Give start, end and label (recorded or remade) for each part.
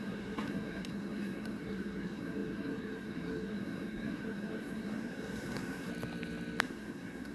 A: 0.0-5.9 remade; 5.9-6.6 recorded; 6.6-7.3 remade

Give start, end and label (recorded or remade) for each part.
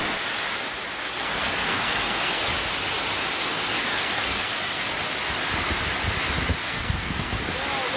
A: 0.0-1.1 recorded; 1.1-2.5 remade; 2.5-3.8 recorded; 3.8-4.9 remade; 4.9-6.6 recorded; 6.6-7.4 remade; 7.4-8.0 recorded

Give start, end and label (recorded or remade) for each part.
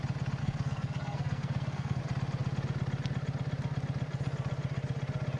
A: 0.0-0.4 recorded; 0.4-2.0 remade; 2.0-5.4 recorded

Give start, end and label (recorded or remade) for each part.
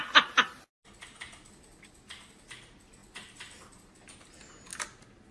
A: 0.0-5.3 recorded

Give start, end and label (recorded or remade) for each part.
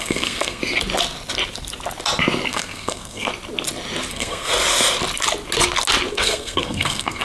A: 0.0-0.6 remade; 0.6-2.5 recorded; 2.5-3.3 remade; 3.3-4.1 recorded; 4.1-4.5 remade; 4.5-6.1 recorded; 6.1-7.2 remade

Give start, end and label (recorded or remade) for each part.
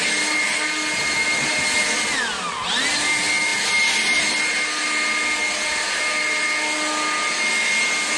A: 0.0-8.2 recorded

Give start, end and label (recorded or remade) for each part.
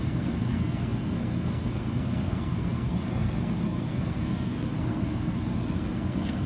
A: 0.0-6.5 remade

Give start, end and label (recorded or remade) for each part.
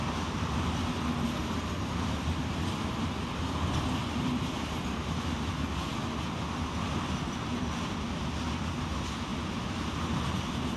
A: 0.0-10.8 recorded